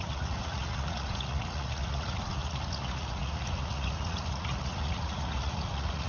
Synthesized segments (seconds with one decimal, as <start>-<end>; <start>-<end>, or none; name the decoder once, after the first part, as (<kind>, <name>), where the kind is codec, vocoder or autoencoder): 0.0-6.1 (vocoder, Vocos)